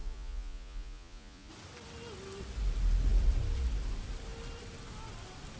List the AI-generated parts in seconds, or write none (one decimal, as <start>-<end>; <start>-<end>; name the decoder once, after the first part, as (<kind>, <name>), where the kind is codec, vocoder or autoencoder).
0.0-1.5 (vocoder, Vocos)